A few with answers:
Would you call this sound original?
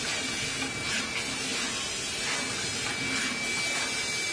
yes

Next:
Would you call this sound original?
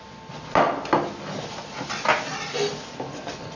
yes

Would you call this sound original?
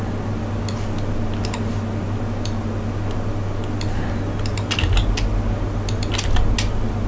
yes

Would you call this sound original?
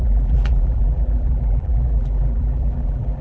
no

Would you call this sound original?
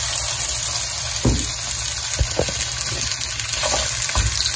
yes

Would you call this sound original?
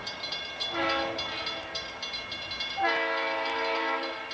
yes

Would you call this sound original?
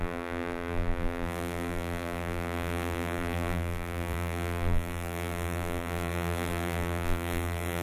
no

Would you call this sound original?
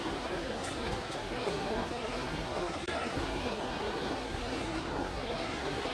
no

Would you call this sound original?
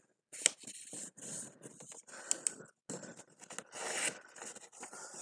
yes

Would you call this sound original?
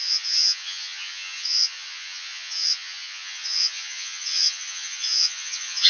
no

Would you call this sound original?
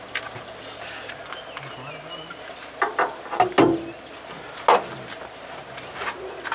yes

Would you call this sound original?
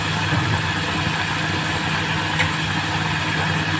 yes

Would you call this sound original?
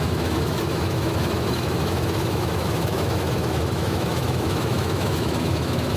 no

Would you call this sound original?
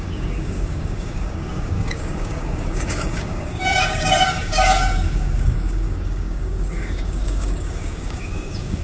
no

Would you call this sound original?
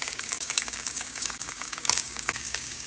no